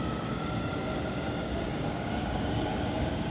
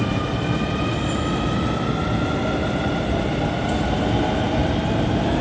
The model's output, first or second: first